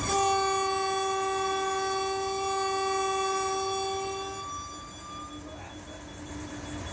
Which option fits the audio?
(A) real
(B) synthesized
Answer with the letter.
A